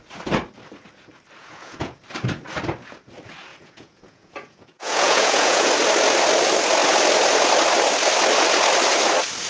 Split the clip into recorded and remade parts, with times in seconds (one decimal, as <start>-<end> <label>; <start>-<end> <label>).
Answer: 0.0-1.4 recorded; 1.4-2.0 remade; 2.0-3.5 recorded; 3.5-5.7 remade; 5.7-9.5 recorded